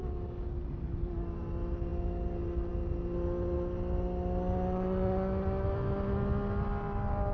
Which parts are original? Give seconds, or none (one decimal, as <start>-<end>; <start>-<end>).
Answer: 0.0-7.3